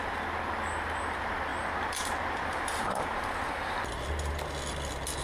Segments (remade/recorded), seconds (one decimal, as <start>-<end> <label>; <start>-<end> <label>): 0.0-1.5 recorded; 1.5-3.8 remade; 3.8-5.2 recorded

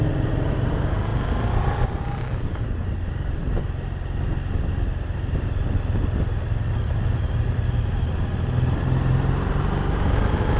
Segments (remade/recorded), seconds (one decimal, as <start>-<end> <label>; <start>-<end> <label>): 0.0-10.6 recorded

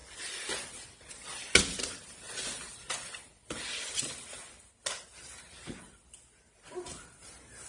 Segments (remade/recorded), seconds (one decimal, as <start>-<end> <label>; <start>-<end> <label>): 0.0-7.7 recorded

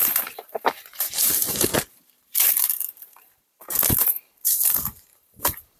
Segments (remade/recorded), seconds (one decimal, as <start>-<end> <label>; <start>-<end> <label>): 0.0-1.7 remade; 1.7-2.2 recorded; 2.2-5.8 remade

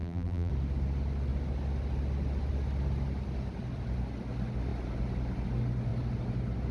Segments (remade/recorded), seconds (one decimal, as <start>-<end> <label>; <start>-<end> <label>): 0.0-0.5 remade; 0.5-6.7 recorded

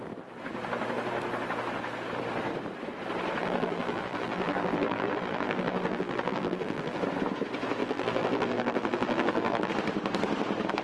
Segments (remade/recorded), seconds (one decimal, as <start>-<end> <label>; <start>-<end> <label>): 0.0-3.4 recorded; 3.4-7.0 remade; 7.0-7.8 recorded; 7.8-9.7 remade; 9.7-10.8 recorded

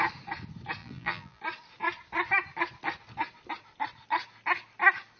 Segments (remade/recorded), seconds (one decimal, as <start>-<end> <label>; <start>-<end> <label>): 0.0-0.8 recorded; 0.8-1.4 remade; 1.4-5.2 recorded

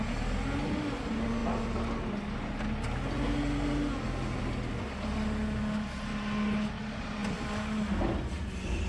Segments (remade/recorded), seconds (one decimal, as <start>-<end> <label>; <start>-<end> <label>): 0.0-8.9 recorded